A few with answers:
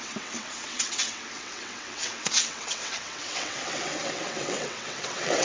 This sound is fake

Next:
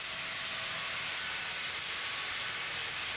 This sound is real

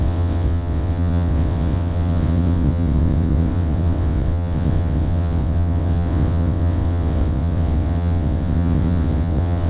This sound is fake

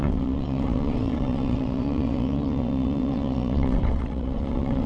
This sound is fake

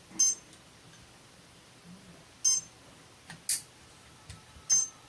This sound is real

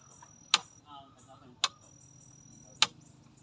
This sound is real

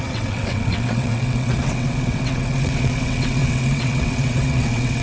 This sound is fake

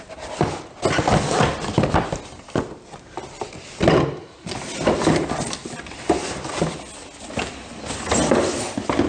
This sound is real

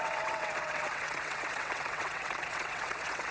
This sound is fake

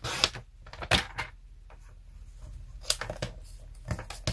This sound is real